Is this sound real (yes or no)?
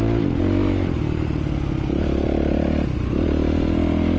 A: yes